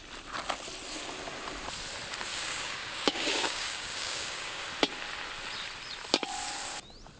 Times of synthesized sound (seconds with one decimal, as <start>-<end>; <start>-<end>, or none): 2.3-4.6